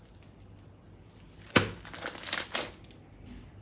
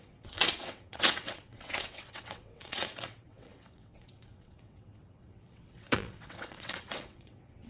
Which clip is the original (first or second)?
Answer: first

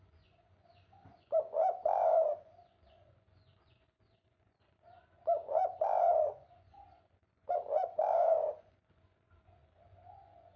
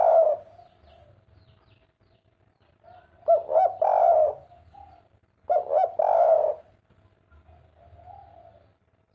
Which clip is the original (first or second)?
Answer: second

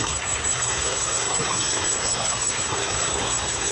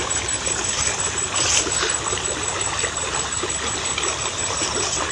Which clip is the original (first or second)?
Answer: second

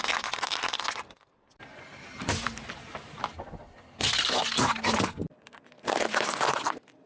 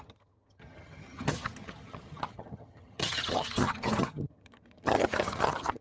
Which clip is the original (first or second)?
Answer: first